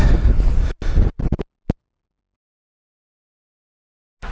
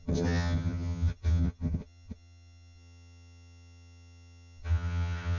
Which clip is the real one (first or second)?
first